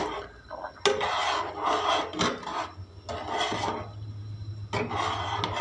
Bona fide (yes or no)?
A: yes